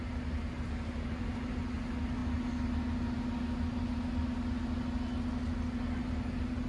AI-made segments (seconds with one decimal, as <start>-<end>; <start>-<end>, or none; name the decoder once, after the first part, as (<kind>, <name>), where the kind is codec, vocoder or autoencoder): none